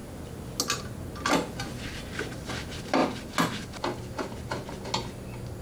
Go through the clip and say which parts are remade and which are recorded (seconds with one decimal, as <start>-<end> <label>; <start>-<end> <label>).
0.0-5.6 recorded